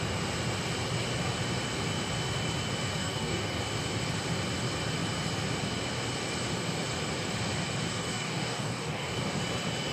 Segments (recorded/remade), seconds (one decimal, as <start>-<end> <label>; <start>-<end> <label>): 0.0-3.0 recorded; 3.0-3.6 remade; 3.6-7.9 recorded; 7.9-9.4 remade; 9.4-9.9 recorded